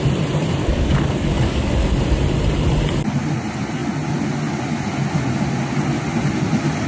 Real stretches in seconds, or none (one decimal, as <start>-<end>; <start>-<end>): 0.0-0.6; 1.7-6.9